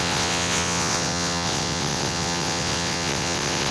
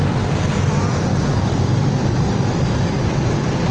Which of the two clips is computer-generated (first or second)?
first